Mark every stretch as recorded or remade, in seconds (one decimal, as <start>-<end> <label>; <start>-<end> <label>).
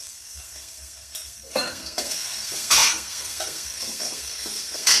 0.0-5.0 remade